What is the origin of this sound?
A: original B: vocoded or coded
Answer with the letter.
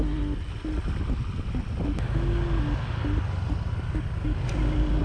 A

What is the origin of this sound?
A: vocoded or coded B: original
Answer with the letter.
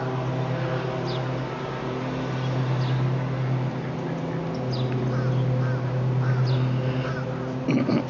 B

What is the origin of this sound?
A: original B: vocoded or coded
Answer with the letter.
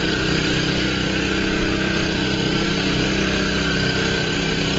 A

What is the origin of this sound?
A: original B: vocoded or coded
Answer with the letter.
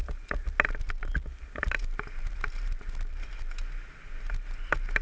A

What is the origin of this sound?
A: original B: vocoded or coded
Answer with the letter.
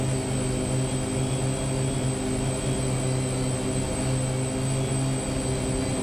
A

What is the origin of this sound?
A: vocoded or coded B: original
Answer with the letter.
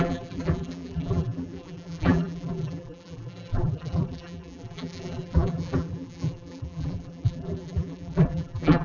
A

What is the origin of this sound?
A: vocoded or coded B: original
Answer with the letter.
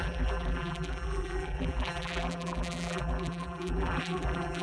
A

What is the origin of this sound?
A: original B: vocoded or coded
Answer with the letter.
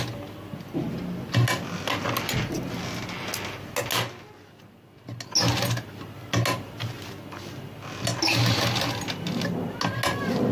A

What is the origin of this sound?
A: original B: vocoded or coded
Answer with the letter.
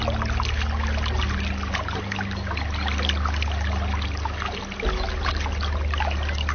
A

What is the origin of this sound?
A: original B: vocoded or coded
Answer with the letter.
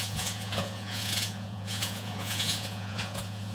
B